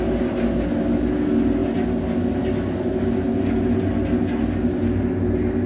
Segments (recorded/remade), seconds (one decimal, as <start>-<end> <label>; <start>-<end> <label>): 0.0-5.7 recorded